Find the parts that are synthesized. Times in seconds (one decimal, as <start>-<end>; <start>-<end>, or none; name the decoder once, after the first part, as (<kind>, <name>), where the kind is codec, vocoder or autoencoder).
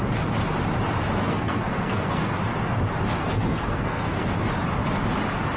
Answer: 1.2-2.3 (codec, SNAC); 3.2-4.3